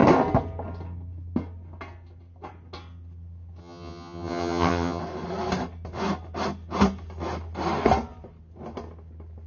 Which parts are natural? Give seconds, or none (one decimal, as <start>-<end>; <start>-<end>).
0.0-3.6; 5.0-9.5